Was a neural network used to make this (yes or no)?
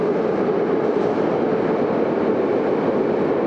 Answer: no